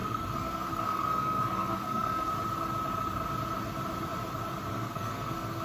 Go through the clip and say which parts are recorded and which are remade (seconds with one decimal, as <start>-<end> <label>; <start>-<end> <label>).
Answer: 0.0-2.3 remade; 2.3-4.7 recorded; 4.7-5.6 remade